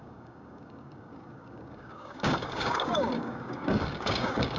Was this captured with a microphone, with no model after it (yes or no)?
no